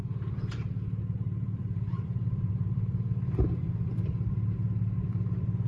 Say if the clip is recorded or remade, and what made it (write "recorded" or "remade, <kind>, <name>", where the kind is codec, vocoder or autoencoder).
remade, vocoder, BigVGAN v2